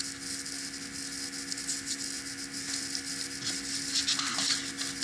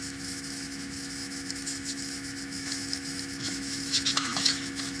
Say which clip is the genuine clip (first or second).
first